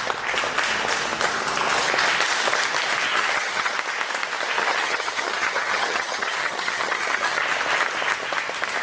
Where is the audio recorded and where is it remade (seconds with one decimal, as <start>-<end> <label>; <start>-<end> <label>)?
0.0-3.1 recorded; 3.1-3.7 remade; 3.7-4.6 recorded; 4.6-7.4 remade; 7.4-8.8 recorded